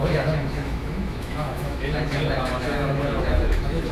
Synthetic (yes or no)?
yes